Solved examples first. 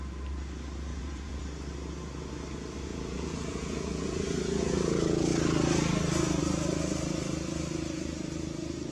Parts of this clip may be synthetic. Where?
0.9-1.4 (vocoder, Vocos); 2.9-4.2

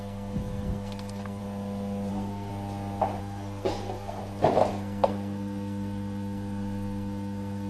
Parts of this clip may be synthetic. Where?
0.0-1.4 (codec, SNAC); 2.1-2.5; 3.2-4.2; 4.7-7.7

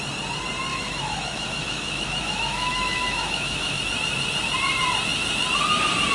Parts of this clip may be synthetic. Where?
0.7-3.8 (autoencoder, DAC-VAE)